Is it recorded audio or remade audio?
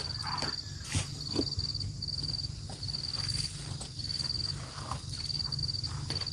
recorded